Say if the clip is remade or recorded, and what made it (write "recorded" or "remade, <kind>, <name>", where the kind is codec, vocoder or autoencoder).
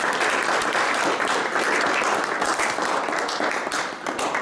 recorded